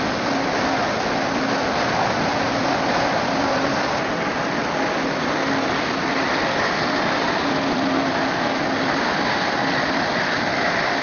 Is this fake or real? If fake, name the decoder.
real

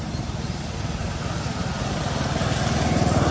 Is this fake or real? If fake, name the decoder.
real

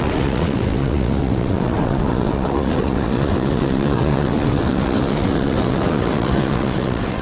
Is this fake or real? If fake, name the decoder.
fake, vocoder, WaveNeXt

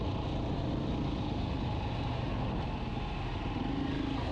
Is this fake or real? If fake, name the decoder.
real